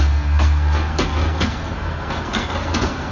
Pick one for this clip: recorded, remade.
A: remade